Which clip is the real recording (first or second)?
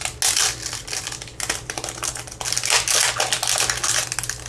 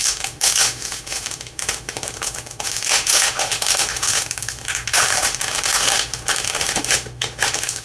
first